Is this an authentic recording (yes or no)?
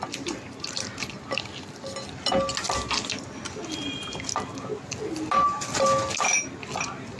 yes